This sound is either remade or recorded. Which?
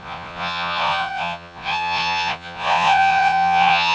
remade